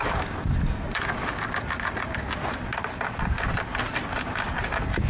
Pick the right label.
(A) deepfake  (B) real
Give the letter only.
B